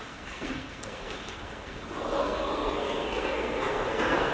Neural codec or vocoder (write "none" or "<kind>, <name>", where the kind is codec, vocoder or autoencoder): codec, SNAC